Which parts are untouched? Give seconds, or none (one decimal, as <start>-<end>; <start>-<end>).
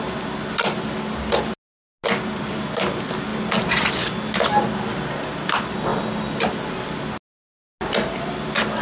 0.0-8.8